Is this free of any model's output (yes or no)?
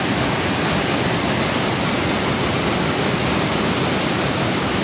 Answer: yes